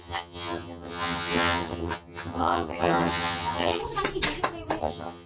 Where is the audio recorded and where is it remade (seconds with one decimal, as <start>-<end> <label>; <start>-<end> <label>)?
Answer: 0.0-3.8 remade; 3.8-4.8 recorded; 4.8-5.3 remade